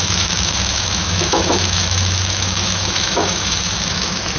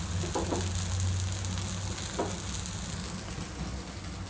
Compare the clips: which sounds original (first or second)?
second